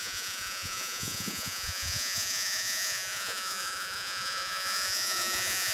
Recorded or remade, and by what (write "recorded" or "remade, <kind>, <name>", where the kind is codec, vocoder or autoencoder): remade, vocoder, Vocos